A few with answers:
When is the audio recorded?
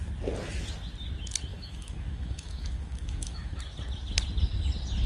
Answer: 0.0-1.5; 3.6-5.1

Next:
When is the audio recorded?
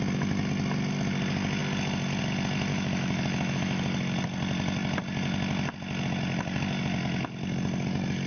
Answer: 0.0-2.7; 3.8-8.3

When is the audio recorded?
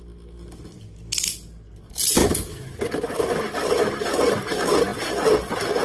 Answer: 0.0-2.2; 2.8-5.8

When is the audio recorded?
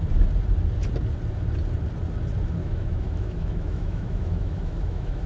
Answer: 0.0-2.6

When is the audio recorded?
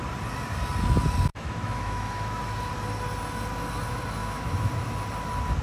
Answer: 0.0-1.3; 2.4-4.2; 4.7-5.6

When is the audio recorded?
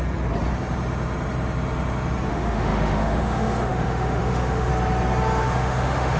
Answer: 0.0-2.3; 4.7-5.4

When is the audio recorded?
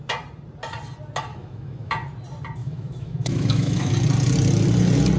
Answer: 0.0-1.3; 1.9-2.6; 3.9-5.2